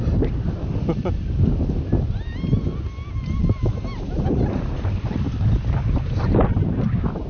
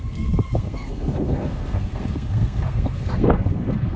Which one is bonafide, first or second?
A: first